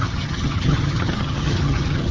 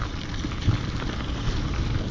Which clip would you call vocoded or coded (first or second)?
first